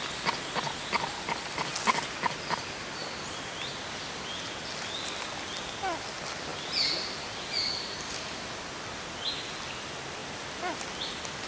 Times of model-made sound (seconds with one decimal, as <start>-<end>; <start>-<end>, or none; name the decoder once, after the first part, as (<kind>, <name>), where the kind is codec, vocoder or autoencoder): none